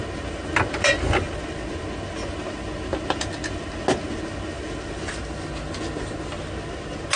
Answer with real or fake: real